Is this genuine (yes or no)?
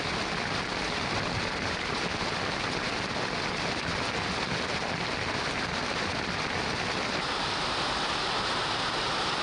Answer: yes